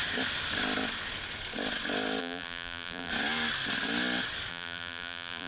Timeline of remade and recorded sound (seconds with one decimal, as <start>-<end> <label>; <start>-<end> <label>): 0.0-2.2 recorded; 2.2-3.1 remade; 3.1-4.5 recorded; 4.5-5.5 remade